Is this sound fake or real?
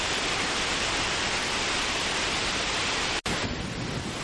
real